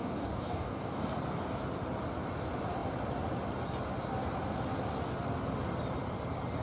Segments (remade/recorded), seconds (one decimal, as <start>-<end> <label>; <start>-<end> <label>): 0.0-1.0 remade; 1.0-6.6 recorded

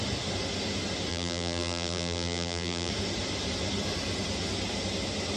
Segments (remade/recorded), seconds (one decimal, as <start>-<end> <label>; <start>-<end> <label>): 0.0-1.1 recorded; 1.1-2.9 remade; 2.9-5.4 recorded

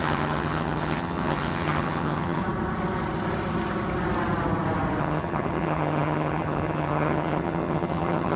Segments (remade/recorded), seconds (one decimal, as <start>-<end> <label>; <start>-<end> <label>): 0.0-2.4 remade; 2.4-5.0 recorded; 5.0-8.4 remade

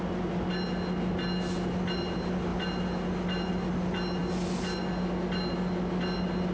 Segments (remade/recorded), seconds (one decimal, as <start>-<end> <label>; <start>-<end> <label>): 0.0-6.5 recorded

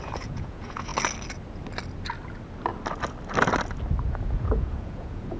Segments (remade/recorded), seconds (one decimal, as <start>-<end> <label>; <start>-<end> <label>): 0.0-0.9 remade; 0.9-4.1 recorded; 4.1-5.4 remade

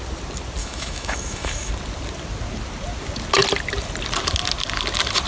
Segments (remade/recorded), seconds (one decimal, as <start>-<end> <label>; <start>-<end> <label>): 0.0-0.6 recorded; 0.6-1.7 remade; 1.7-5.3 recorded

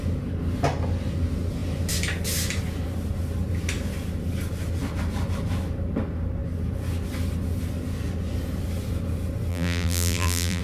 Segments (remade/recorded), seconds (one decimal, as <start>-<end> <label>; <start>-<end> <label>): 0.0-9.5 recorded; 9.5-10.6 remade